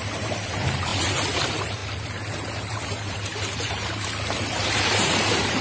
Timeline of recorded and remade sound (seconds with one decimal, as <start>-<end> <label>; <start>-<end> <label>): 0.0-0.9 remade; 0.9-1.4 recorded; 1.4-1.8 remade; 1.8-2.3 recorded; 2.3-5.6 remade